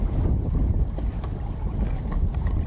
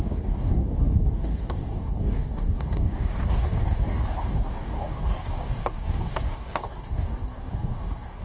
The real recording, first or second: first